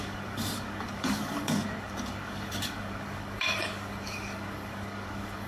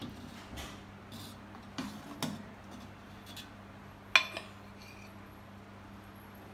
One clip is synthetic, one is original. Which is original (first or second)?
second